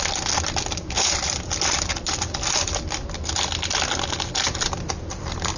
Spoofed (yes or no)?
no